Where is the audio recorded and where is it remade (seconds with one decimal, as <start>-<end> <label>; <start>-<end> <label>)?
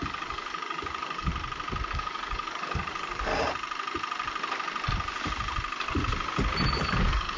0.0-1.3 remade; 1.3-1.9 recorded; 1.9-3.3 remade; 3.3-6.7 recorded; 6.7-7.4 remade